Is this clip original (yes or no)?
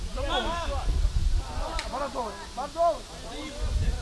yes